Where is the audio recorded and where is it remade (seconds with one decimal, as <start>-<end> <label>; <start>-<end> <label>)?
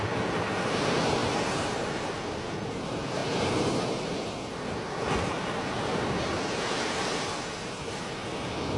0.0-8.8 recorded